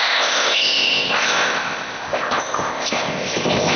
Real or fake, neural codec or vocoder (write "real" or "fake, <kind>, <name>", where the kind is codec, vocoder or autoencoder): fake, codec, ZipCodec